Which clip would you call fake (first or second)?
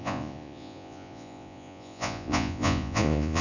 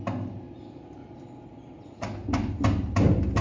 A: first